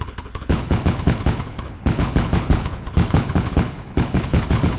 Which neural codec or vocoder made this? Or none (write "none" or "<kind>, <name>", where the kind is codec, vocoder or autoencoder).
codec, HILCodec